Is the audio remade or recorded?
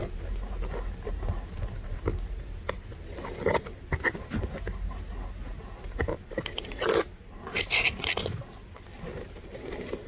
recorded